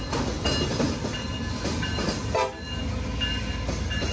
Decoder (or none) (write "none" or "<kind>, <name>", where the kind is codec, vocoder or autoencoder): none